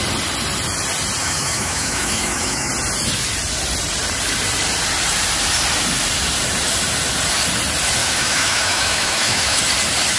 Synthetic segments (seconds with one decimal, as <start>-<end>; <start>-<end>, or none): 1.2-2.7; 8.0-9.6